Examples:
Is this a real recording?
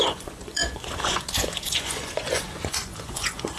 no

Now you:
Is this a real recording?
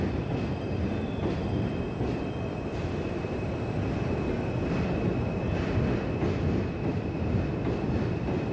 yes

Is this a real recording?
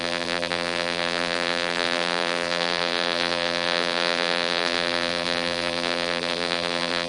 no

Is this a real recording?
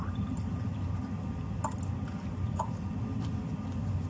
yes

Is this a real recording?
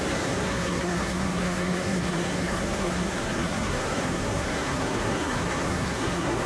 no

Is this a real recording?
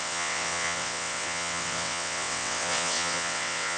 no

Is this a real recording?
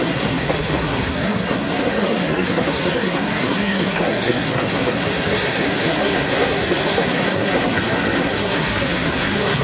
no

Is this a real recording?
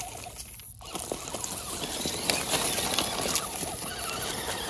yes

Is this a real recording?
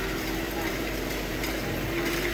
no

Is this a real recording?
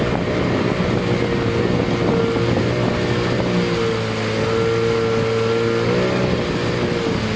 yes